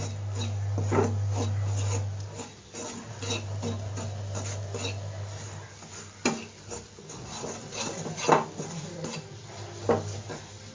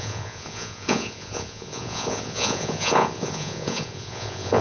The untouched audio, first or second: first